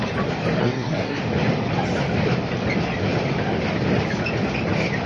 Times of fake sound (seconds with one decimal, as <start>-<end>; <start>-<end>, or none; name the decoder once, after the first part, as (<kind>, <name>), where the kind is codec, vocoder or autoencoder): 0.6-1.2 (codec, SNAC)